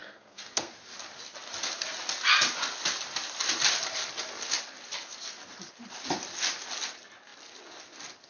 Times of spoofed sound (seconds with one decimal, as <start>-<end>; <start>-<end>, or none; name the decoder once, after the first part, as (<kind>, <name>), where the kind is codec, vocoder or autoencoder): 0.0-0.7 (codec, SNAC)